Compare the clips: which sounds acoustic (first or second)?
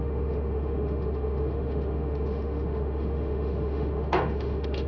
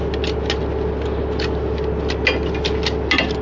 second